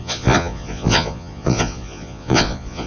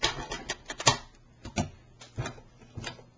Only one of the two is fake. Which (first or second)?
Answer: first